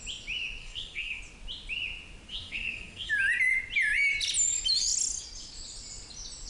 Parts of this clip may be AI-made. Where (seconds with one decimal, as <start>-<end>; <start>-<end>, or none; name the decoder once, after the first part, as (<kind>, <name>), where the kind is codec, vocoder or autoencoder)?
0.6-1.2 (codec, SNAC); 2.3-3.1

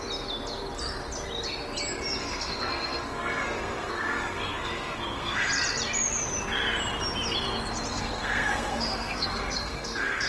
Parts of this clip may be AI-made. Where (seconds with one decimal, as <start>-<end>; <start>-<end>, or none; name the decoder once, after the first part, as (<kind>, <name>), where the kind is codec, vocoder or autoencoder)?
2.2-5.5 (codec, SNAC); 7.9-10.3

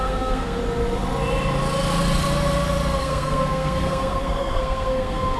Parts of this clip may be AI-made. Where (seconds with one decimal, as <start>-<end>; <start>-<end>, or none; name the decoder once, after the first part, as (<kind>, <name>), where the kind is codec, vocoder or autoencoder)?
0.0-0.6 (codec, SNAC); 3.0-5.4